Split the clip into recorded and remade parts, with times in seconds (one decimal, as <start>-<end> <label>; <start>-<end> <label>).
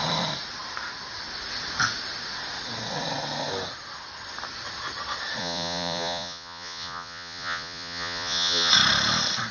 0.0-5.4 recorded; 5.4-8.7 remade; 8.7-9.5 recorded